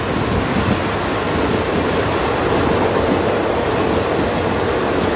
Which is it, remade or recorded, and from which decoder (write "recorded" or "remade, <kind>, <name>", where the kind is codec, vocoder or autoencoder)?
recorded